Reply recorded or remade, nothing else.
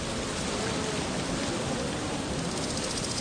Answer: recorded